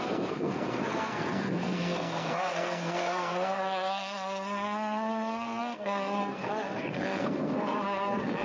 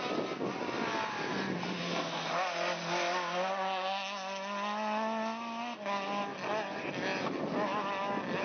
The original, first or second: second